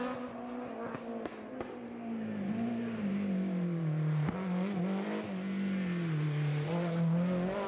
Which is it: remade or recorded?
recorded